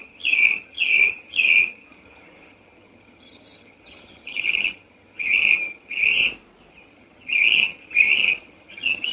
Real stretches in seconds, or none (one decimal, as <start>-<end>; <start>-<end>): 6.1-6.7